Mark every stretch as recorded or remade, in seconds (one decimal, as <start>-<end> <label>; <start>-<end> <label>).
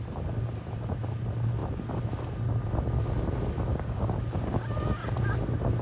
0.0-3.7 recorded; 3.7-4.6 remade; 4.6-5.8 recorded